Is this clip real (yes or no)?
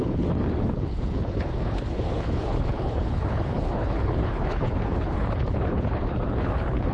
no